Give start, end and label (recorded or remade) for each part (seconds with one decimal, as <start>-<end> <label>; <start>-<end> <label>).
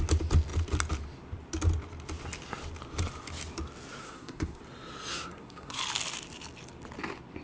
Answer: 0.0-4.0 recorded; 4.0-4.6 remade; 4.6-5.1 recorded; 5.1-5.8 remade; 5.8-7.4 recorded